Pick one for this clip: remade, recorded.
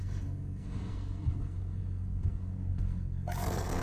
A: remade